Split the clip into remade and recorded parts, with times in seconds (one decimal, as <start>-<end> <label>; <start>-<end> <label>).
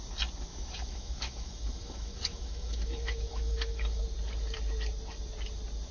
0.0-0.5 recorded; 0.5-4.0 remade; 4.0-5.9 recorded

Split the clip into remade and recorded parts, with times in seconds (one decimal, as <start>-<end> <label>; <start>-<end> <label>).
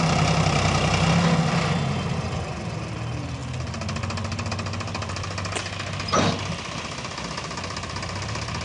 0.0-8.6 recorded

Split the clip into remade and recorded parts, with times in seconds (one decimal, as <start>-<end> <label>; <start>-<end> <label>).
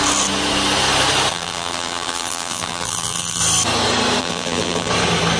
0.0-1.3 recorded; 1.3-3.4 remade; 3.4-4.2 recorded; 4.2-4.9 remade; 4.9-5.4 recorded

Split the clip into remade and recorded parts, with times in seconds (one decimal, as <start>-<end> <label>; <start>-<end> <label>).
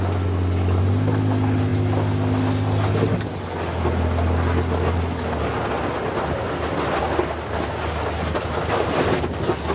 0.0-9.7 recorded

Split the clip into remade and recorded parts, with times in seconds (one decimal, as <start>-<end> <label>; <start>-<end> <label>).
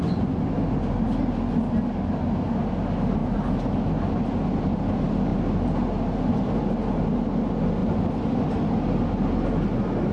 0.0-10.1 recorded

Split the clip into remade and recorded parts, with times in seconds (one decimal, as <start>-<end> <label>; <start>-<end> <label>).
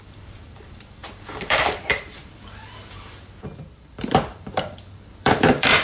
0.0-5.8 remade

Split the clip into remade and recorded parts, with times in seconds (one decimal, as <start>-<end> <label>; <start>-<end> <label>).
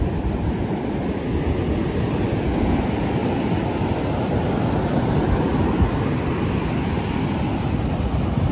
0.0-8.5 recorded